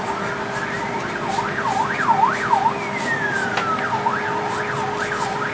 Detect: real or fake real